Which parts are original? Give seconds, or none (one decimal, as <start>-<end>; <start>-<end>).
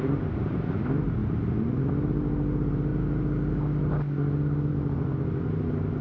0.0-6.0